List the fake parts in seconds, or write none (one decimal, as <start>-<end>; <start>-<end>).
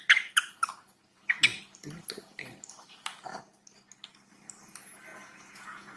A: 5.1-6.0